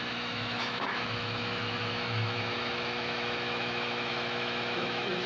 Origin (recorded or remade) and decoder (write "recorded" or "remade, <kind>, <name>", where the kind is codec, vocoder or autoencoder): remade, autoencoder, DAC-VAE